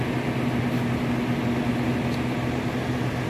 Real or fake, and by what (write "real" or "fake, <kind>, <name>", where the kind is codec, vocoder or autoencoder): real